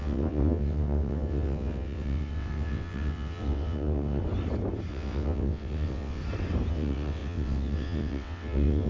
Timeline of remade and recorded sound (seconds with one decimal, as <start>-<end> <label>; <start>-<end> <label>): 0.0-4.2 remade; 4.2-4.9 recorded; 4.9-6.2 remade; 6.2-6.7 recorded; 6.7-8.9 remade